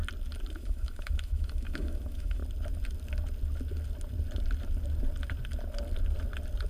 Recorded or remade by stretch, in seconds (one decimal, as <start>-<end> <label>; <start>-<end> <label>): 0.0-0.5 recorded; 0.5-2.4 remade; 2.4-6.7 recorded

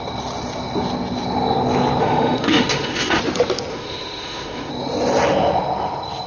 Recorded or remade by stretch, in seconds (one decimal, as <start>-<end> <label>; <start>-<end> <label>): 0.0-2.0 recorded; 2.0-3.2 remade; 3.2-3.7 recorded; 3.7-4.7 remade; 4.7-6.3 recorded

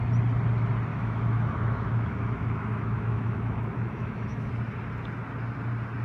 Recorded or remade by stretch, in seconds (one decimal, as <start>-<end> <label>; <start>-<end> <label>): 0.0-0.9 recorded; 0.9-4.5 remade; 4.5-6.0 recorded

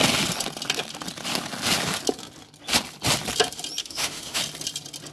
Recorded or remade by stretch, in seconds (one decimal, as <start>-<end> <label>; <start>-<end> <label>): 0.0-3.8 recorded; 3.8-4.4 remade; 4.4-5.1 recorded

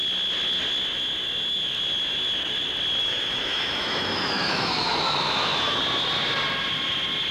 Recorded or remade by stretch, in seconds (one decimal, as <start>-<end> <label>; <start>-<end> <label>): 0.0-3.0 recorded; 3.0-5.8 remade; 5.8-7.3 recorded

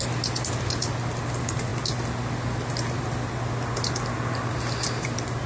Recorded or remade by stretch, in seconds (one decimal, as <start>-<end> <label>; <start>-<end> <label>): 0.0-5.5 recorded

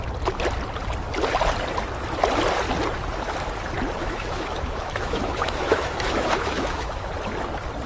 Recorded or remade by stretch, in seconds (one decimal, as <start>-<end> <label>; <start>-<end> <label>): 0.0-4.0 recorded; 4.0-7.1 remade; 7.1-7.9 recorded

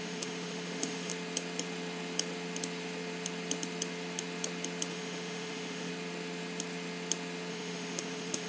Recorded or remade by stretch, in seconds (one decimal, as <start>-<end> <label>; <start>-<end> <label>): 0.0-1.1 remade; 1.1-4.9 recorded; 4.9-5.9 remade; 5.9-7.5 recorded; 7.5-8.5 remade